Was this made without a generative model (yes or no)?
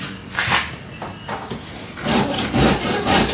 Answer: yes